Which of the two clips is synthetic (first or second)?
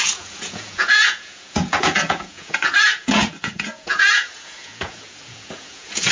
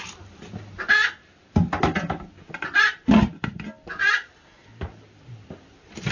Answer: first